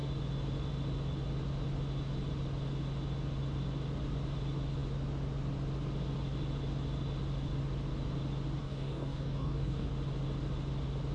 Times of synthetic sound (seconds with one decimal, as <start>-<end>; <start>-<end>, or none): 8.6-9.9